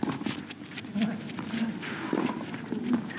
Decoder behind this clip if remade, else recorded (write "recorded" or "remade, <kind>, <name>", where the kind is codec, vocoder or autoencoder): recorded